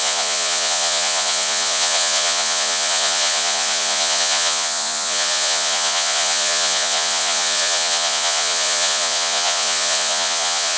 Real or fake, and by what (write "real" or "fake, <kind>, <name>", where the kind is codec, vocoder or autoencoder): fake, vocoder, Vocos